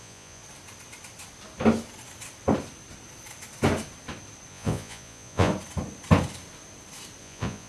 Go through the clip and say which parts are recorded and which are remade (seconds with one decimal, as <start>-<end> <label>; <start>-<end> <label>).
0.0-0.4 remade; 0.4-4.5 recorded; 4.5-5.5 remade; 5.5-7.2 recorded; 7.2-7.7 remade